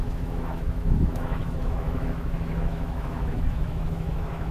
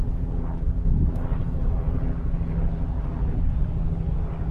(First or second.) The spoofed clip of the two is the first